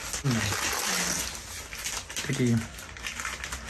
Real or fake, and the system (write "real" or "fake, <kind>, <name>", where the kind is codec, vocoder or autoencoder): real